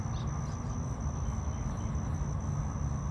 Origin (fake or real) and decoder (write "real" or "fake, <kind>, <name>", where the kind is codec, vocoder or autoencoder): real